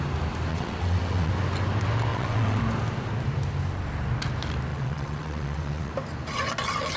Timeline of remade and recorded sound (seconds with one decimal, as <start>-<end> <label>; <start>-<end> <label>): 0.0-0.5 recorded; 0.5-1.3 remade; 1.3-2.1 recorded; 2.1-2.6 remade; 2.6-4.7 recorded; 4.7-5.9 remade; 5.9-7.0 recorded